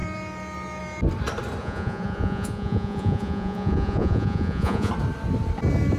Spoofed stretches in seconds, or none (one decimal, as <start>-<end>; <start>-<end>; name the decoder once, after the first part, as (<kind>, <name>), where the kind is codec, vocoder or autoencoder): 1.6-4.9 (vocoder, Vocos)